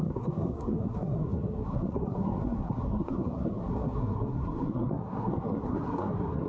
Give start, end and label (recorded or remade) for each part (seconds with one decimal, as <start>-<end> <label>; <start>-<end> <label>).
0.0-6.5 remade